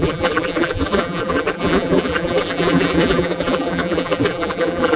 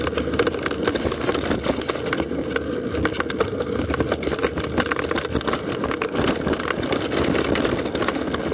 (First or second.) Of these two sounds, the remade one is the first